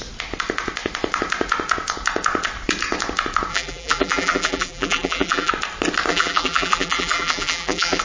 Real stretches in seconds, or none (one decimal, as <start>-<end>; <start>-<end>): 0.0-3.5; 5.5-6.1